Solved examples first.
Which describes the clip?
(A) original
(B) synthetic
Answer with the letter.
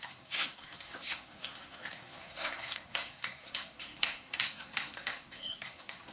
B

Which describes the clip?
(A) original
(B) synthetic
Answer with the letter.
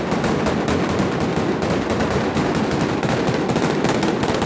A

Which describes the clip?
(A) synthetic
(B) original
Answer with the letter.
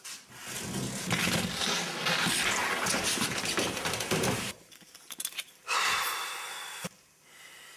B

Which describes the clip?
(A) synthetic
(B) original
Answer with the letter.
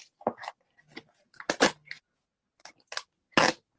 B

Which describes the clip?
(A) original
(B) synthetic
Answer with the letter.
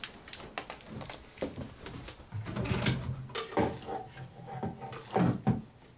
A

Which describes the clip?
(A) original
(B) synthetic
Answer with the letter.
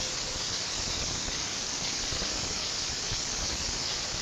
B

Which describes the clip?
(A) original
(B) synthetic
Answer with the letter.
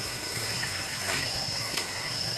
B